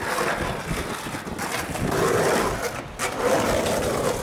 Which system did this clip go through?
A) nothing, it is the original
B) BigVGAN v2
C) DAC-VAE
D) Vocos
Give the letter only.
A